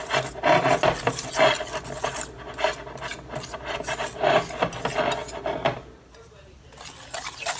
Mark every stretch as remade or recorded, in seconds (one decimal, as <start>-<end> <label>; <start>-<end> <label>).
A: 0.0-7.6 recorded